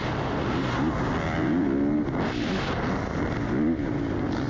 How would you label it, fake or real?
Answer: real